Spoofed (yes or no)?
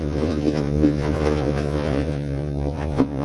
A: yes